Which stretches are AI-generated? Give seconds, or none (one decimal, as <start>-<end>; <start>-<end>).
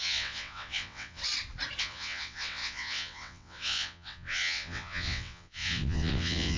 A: 0.0-1.2; 1.8-6.6